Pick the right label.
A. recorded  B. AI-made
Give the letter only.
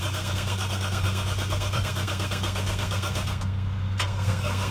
B